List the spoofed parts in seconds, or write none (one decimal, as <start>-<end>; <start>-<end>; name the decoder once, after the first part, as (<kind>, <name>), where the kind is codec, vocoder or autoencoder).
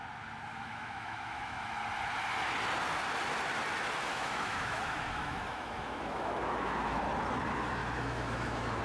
0.5-1.8 (autoencoder, DAC-VAE); 4.1-7.0; 7.8-8.8